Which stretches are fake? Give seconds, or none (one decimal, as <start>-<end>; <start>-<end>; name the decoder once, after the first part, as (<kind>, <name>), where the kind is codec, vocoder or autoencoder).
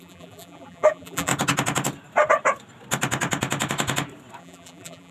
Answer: 0.0-1.3 (vocoder, BigVGAN v2); 4.4-5.1